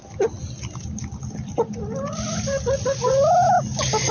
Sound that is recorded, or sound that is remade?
recorded